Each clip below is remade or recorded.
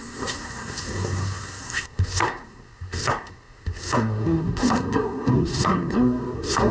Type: remade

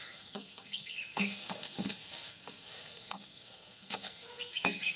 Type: remade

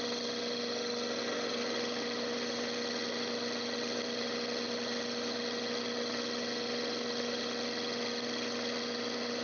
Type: recorded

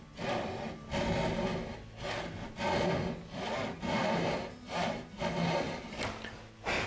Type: recorded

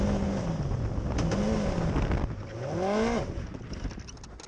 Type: recorded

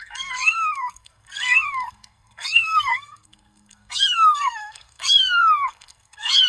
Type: remade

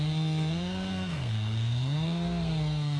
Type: remade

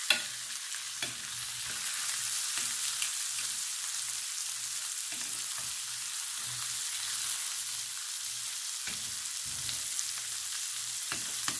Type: recorded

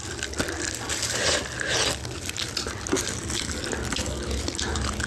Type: recorded